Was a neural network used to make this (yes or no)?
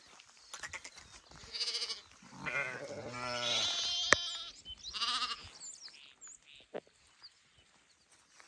no